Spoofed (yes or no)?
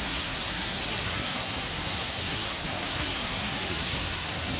yes